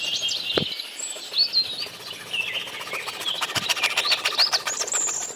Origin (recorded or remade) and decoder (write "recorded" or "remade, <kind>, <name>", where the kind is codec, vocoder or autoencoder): recorded